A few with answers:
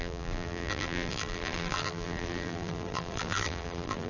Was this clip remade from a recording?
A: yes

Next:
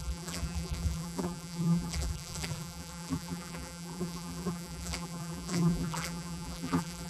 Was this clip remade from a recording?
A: yes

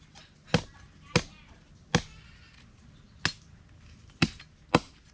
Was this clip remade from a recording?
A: no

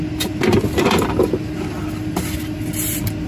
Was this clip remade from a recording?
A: no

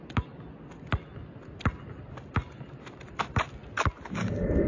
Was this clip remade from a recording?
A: no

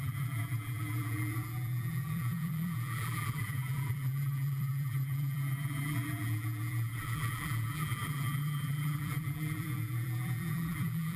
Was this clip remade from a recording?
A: yes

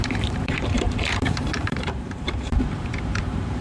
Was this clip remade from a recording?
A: yes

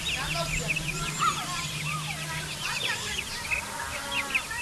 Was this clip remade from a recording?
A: yes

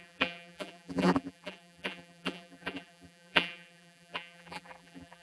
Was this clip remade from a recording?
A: yes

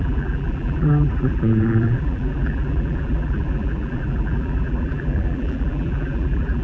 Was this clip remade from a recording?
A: yes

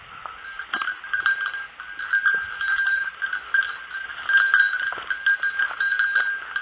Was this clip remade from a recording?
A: yes